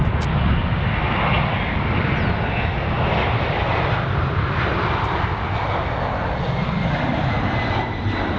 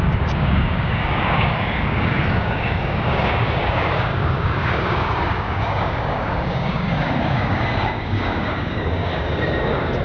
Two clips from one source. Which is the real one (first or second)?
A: first